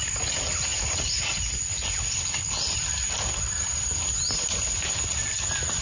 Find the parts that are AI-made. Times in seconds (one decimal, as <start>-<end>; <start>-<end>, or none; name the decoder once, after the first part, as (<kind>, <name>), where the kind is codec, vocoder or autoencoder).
none